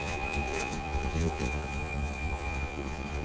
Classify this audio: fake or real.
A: fake